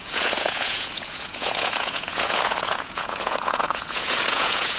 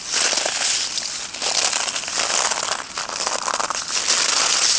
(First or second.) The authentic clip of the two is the second